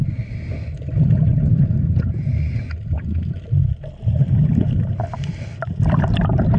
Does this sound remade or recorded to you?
recorded